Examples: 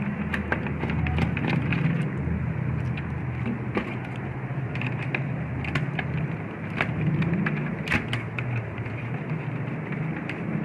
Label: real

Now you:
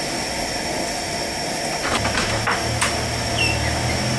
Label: real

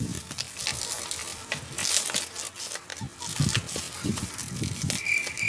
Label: real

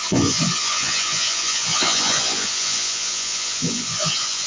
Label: fake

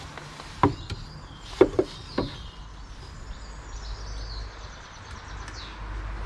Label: real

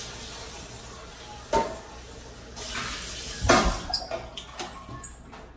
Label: real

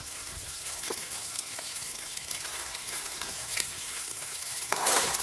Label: fake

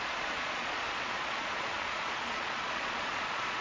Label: fake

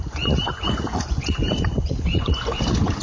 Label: fake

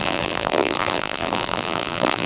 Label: fake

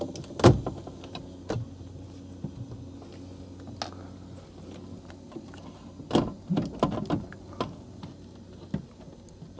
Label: real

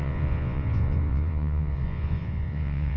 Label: fake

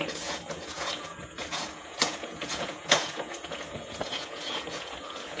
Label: fake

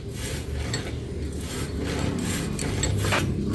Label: real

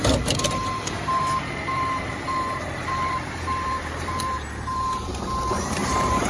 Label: fake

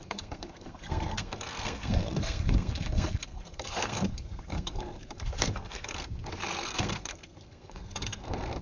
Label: fake